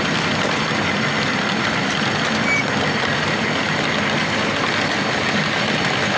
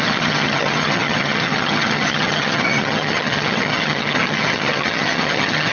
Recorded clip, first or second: first